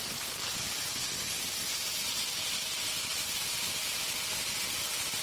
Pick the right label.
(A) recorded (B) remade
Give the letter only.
A